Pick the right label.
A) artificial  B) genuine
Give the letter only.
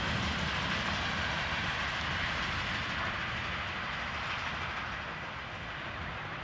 B